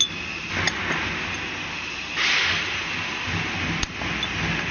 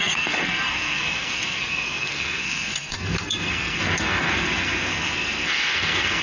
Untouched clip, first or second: first